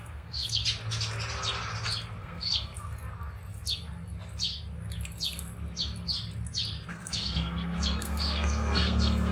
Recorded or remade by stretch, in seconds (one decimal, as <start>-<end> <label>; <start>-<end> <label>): 0.0-0.6 remade; 0.6-2.2 recorded; 2.2-2.7 remade; 2.7-6.9 recorded; 6.9-9.3 remade